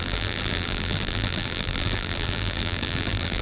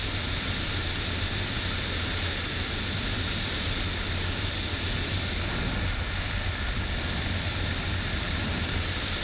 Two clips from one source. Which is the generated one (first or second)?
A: first